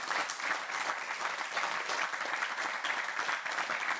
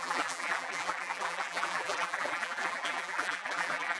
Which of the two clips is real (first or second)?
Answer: first